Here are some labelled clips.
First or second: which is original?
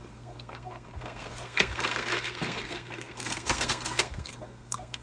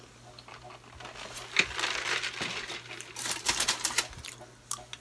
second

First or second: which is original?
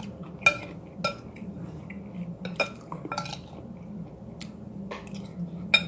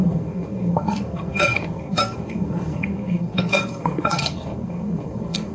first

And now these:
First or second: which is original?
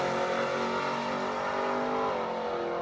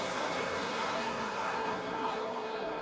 first